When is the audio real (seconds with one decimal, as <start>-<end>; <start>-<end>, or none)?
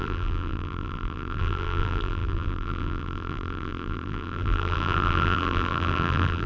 none